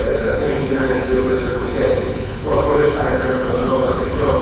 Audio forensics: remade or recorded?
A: remade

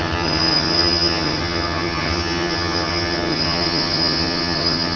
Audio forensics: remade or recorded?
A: remade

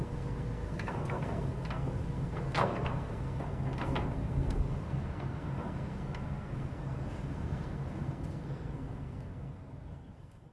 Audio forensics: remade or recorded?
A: remade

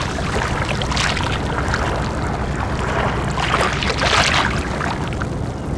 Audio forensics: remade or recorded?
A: recorded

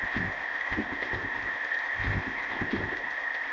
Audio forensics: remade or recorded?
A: remade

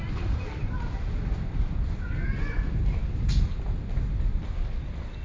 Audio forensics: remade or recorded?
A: recorded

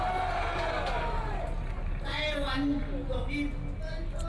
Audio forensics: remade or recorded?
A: recorded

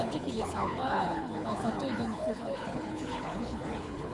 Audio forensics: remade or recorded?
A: remade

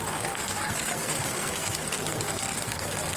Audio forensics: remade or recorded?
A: remade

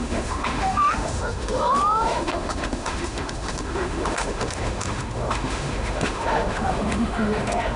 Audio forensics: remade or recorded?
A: remade